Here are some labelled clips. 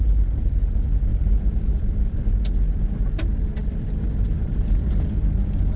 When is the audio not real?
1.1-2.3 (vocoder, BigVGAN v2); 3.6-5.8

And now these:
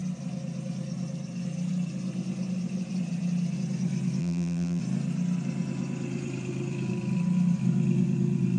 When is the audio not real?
4.2-4.8 (vocoder, BigVGAN v2)